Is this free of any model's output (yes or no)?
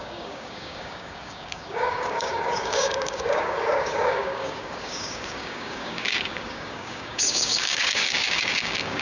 no